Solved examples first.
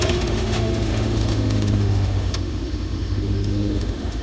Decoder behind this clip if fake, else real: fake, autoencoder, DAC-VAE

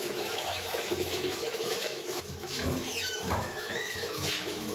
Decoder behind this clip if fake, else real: fake, autoencoder, DAC-VAE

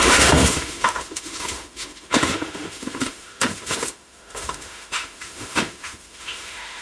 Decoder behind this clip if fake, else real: fake, autoencoder, DAC-VAE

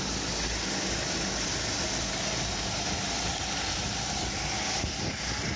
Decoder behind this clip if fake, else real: real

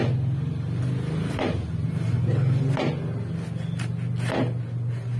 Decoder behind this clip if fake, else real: real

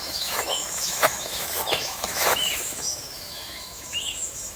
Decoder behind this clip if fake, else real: fake, autoencoder, DAC-VAE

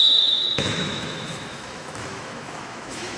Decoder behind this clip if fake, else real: fake, autoencoder, DAC-VAE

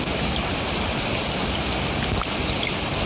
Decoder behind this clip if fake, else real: real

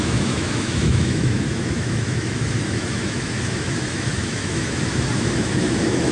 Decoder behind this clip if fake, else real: fake, autoencoder, DAC-VAE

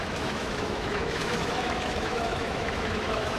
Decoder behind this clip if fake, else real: fake, autoencoder, DAC-VAE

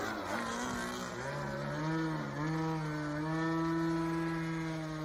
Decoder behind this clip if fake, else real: real